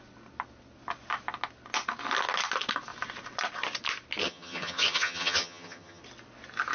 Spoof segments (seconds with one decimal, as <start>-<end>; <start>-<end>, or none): 4.2-6.0